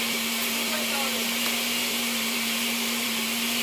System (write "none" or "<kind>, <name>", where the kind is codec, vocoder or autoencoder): vocoder, BigVGAN v2